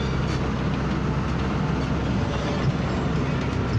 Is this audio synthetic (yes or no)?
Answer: no